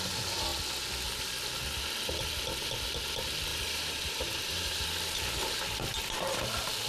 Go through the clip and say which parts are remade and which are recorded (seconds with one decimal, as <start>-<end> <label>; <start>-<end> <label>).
0.0-3.5 recorded; 3.5-4.9 remade; 4.9-6.9 recorded